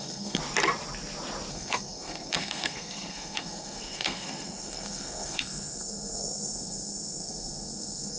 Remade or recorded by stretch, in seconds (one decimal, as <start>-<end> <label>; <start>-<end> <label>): 0.0-0.4 remade; 0.4-1.5 recorded; 1.5-8.2 remade